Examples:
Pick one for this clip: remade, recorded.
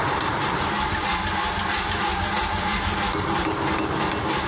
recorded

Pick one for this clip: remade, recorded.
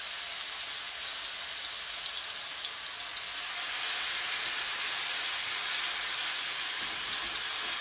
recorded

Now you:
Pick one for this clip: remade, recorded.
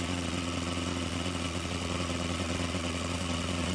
remade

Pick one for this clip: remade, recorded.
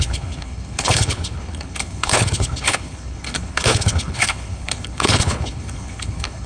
remade